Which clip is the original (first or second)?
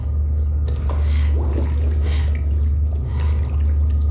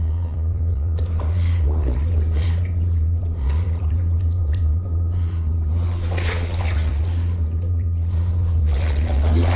first